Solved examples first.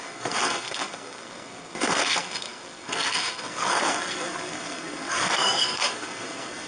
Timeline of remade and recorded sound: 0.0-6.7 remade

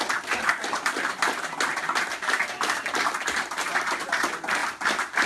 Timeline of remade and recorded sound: 0.0-5.3 recorded

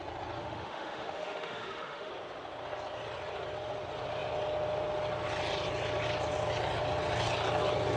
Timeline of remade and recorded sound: 0.0-0.4 recorded; 0.4-2.1 remade; 2.1-8.0 recorded

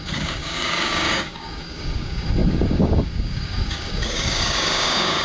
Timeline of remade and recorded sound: 0.0-5.2 remade

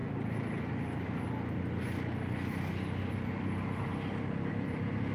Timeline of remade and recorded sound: 0.0-3.1 recorded; 3.1-3.9 remade; 3.9-4.5 recorded; 4.5-5.1 remade

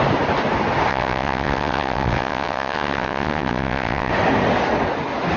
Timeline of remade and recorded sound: 0.0-0.9 recorded; 0.9-4.1 remade; 4.1-5.4 recorded

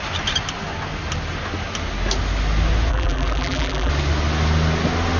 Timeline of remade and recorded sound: 0.0-2.9 recorded; 2.9-3.9 remade; 3.9-5.2 recorded